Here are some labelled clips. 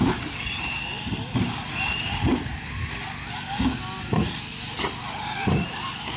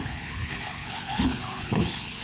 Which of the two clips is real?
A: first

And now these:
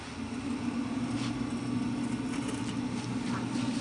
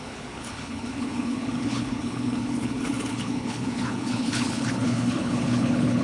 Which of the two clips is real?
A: first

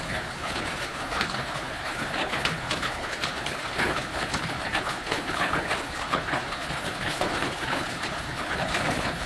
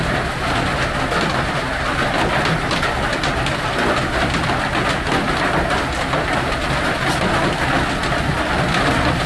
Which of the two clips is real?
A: second